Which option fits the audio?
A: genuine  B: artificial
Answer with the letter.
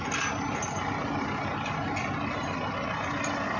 A